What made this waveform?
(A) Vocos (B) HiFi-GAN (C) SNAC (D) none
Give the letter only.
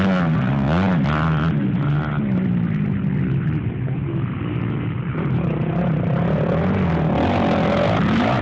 D